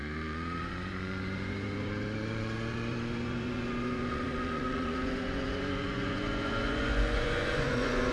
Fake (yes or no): yes